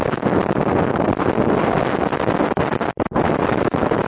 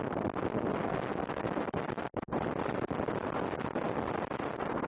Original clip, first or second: first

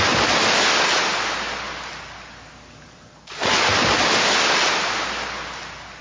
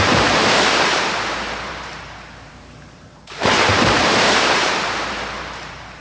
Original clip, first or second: first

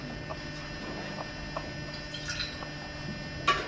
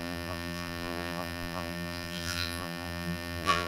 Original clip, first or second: first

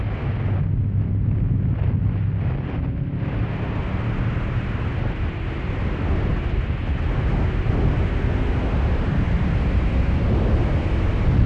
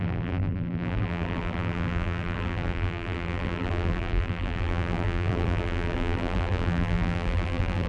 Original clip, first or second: first